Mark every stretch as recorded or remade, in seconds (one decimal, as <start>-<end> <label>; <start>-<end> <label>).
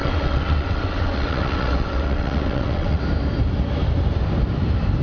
0.0-3.0 remade; 3.0-5.0 recorded